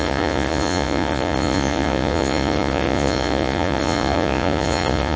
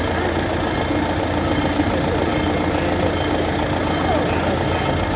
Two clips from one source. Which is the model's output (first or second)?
first